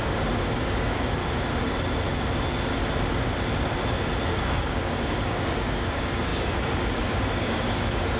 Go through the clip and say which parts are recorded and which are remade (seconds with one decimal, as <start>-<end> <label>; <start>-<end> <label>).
0.0-1.2 remade; 1.2-4.3 recorded; 4.3-8.2 remade